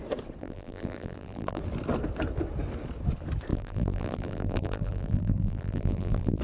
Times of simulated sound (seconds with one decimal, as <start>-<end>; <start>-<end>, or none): 0.4-1.6; 3.5-6.4